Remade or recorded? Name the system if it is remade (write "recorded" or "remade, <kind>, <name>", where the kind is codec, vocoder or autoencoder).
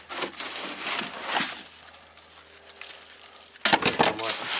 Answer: recorded